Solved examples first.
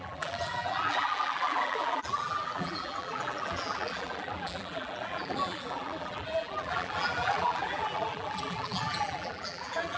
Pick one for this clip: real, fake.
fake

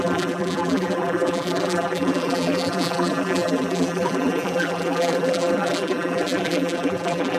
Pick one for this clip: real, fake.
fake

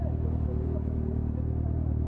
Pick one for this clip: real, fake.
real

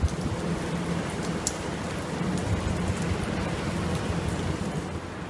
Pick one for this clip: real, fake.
real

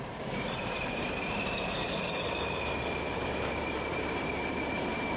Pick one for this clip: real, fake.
fake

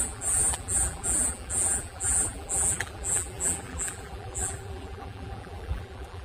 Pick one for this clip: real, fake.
fake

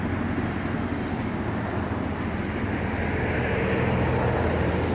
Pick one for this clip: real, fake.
real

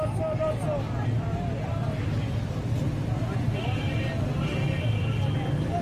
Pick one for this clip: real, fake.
real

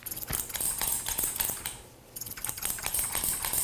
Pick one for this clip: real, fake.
real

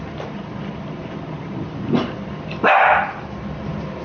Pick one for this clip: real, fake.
fake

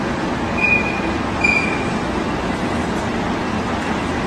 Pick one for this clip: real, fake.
real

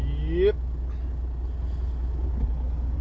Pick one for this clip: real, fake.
real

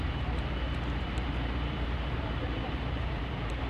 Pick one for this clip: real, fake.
fake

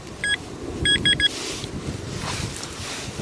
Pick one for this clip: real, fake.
fake